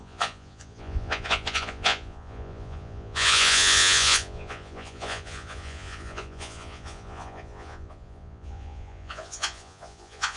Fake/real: fake